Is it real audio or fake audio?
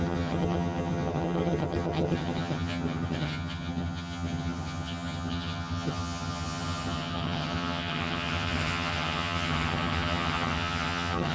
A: fake